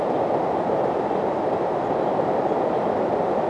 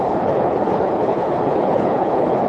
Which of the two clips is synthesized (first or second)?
second